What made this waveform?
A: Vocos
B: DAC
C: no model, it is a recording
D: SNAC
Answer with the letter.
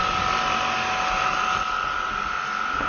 C